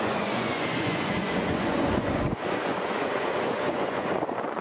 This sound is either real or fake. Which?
fake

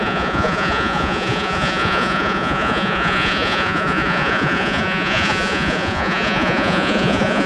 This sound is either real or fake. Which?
fake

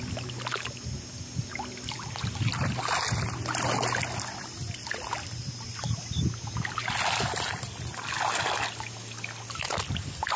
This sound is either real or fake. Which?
real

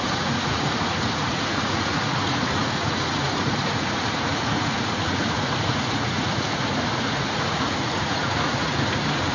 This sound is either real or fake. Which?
fake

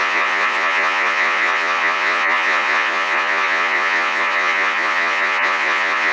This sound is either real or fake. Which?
fake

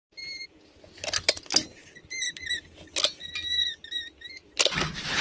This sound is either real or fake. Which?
real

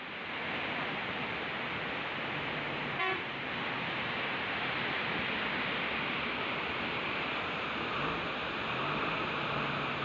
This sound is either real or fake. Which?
real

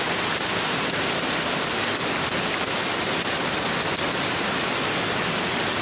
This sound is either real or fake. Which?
real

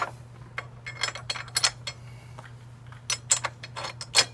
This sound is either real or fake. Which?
real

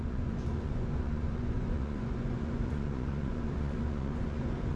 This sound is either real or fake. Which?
fake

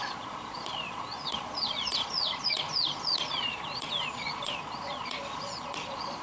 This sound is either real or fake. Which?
fake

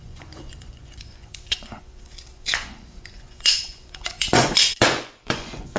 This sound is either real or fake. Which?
fake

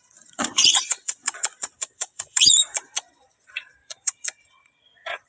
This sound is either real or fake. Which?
fake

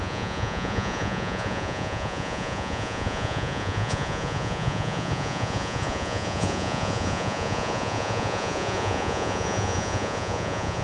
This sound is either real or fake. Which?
fake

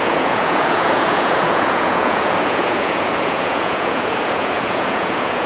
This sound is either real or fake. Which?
fake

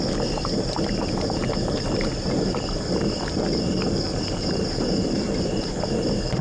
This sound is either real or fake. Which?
real